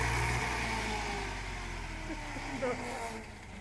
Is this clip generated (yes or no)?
no